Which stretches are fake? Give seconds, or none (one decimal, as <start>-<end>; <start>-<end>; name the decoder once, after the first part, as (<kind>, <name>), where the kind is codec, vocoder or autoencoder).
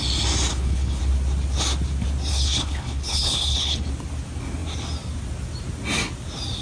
0.5-1.0 (codec, HILCodec); 2.3-3.9